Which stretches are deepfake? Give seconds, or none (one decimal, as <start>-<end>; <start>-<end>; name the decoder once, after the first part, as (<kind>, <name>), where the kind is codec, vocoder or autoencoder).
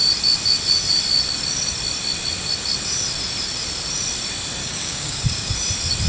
4.6-5.5 (codec, DAC)